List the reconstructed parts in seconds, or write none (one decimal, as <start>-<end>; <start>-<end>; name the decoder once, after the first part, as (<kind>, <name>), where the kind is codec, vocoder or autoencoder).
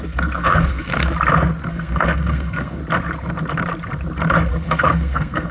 0.0-0.9 (codec, SNAC); 1.7-2.8; 4.5-5.5